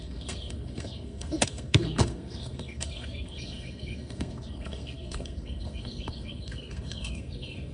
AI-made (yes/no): yes